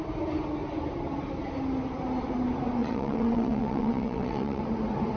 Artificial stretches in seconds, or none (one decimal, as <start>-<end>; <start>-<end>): 2.8-4.6